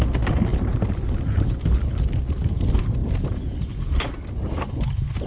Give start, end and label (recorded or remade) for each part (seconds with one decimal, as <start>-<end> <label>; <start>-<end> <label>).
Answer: 0.0-0.5 recorded; 0.5-1.6 remade; 1.6-3.0 recorded; 3.0-3.9 remade; 3.9-5.3 recorded